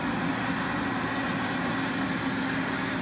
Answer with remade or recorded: recorded